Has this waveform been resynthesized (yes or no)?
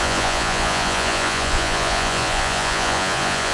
yes